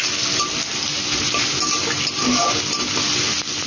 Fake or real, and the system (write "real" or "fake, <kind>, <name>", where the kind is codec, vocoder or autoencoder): real